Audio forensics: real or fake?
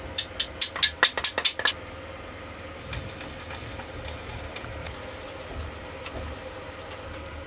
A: real